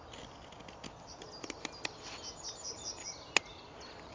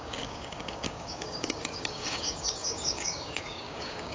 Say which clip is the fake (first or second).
second